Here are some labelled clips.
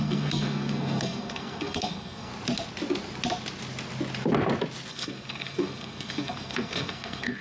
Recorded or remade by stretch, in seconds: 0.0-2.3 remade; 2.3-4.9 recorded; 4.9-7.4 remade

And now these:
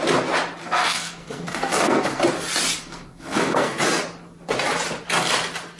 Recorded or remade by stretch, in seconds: 0.0-0.6 recorded; 0.6-2.2 remade; 2.2-2.8 recorded; 2.8-3.8 remade; 3.8-5.8 recorded

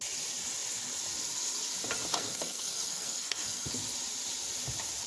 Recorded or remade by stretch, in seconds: 0.0-2.1 recorded; 2.1-3.7 remade; 3.7-5.1 recorded

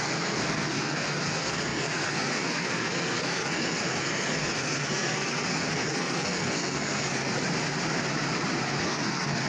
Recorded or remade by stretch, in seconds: 0.0-7.3 remade; 7.3-8.8 recorded; 8.8-9.5 remade

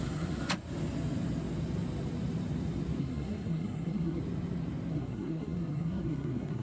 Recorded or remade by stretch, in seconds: 0.0-0.4 remade; 0.4-3.0 recorded; 3.0-4.2 remade; 4.2-4.9 recorded; 4.9-6.6 remade

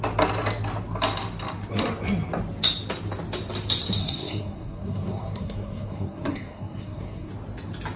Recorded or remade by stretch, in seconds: 0.0-4.0 recorded; 4.0-7.3 remade; 7.3-8.0 recorded